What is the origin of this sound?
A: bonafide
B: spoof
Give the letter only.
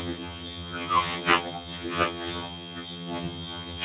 B